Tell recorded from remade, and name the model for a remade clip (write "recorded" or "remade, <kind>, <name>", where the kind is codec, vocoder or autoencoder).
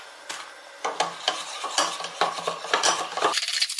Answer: recorded